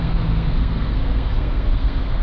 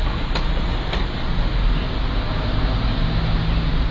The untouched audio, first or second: second